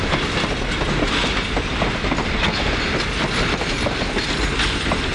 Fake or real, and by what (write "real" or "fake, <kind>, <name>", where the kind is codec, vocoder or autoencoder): real